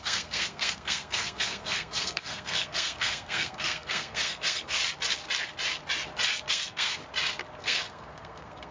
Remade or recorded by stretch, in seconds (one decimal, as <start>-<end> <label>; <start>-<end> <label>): 0.0-4.8 remade; 4.8-6.5 recorded; 6.5-7.0 remade; 7.0-7.6 recorded; 7.6-8.7 remade